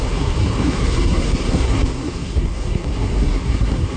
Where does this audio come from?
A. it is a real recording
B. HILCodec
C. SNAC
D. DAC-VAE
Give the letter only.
C